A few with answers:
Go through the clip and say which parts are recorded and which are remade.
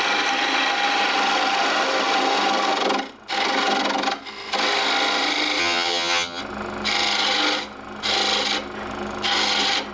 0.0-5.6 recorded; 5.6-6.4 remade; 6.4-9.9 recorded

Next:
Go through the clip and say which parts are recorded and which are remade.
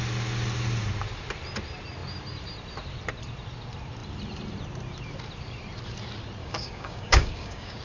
0.0-6.4 recorded; 6.4-7.8 remade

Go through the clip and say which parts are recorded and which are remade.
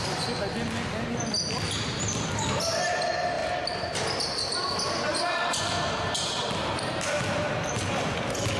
0.0-8.6 recorded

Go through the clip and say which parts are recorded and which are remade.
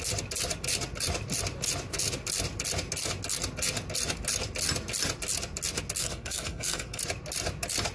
0.0-6.0 recorded; 6.0-7.0 remade; 7.0-7.9 recorded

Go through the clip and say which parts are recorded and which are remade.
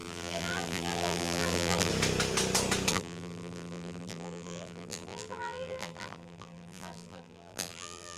0.0-1.9 remade; 1.9-2.9 recorded; 2.9-8.2 remade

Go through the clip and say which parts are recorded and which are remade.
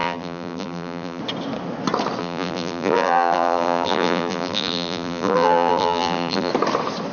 0.0-1.2 remade; 1.2-2.2 recorded; 2.2-6.5 remade; 6.5-7.1 recorded